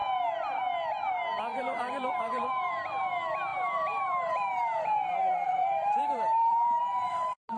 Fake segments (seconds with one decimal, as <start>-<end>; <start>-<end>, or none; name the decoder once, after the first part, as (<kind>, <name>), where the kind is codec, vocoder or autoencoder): 1.5-2.7 (vocoder, BigVGAN v2); 3.5-6.8